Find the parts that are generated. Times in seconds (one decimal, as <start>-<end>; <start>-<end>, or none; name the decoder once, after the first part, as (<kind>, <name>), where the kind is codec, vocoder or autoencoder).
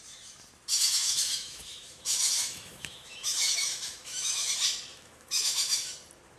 0.7-4.5 (autoencoder, DAC-VAE); 4.9-5.9